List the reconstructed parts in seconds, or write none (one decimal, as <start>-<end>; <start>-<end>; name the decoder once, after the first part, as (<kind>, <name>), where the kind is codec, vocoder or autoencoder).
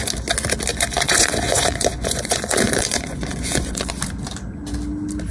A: 0.7-3.9 (vocoder, Vocos)